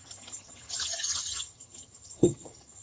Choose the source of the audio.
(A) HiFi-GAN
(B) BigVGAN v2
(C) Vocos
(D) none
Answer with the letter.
A